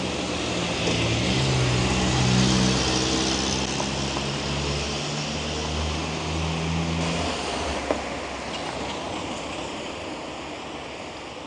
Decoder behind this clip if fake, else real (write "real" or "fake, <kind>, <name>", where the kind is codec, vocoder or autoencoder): real